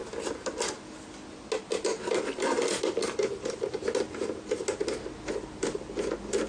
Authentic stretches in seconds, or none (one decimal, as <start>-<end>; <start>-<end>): 0.0-6.5